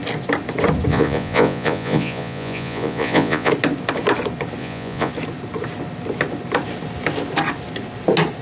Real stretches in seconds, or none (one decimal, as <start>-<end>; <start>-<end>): 0.0-0.9; 3.5-4.6; 5.1-8.4